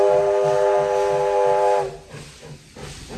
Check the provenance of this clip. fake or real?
real